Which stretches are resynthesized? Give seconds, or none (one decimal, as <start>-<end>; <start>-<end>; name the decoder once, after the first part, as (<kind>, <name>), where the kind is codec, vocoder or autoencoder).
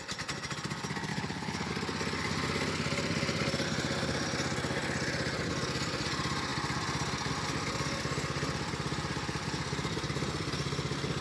1.1-1.7 (codec, HILCodec)